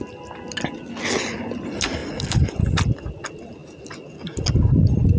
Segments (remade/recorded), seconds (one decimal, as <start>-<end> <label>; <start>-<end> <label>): 0.0-5.2 recorded